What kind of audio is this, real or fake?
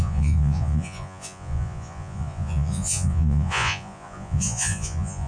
fake